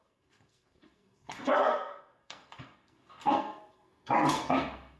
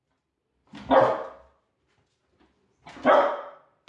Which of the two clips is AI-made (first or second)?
first